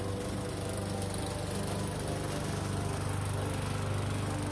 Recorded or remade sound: recorded